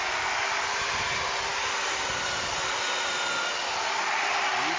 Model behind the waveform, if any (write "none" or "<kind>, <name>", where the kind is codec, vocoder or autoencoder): none